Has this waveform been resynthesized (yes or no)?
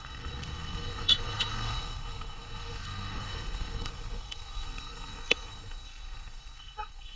yes